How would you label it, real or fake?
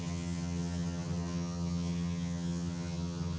fake